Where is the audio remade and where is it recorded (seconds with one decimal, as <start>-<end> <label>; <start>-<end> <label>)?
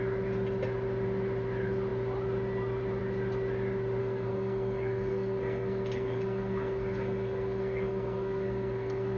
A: 0.0-4.0 recorded; 4.0-9.2 remade